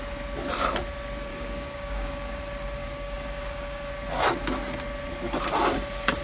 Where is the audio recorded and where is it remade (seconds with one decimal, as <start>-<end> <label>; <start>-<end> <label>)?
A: 0.0-1.3 recorded; 1.3-2.4 remade; 2.4-2.8 recorded; 2.8-3.9 remade; 3.9-6.2 recorded